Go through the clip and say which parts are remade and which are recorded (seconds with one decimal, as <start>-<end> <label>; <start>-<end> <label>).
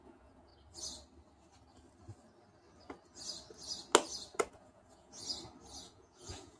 0.0-0.5 remade; 0.5-4.5 recorded; 4.5-5.2 remade; 5.2-5.8 recorded; 5.8-6.6 remade